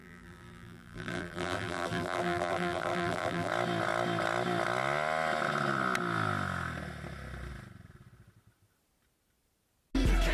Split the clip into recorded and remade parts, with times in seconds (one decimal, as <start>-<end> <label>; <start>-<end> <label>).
0.0-3.5 remade; 3.5-10.3 recorded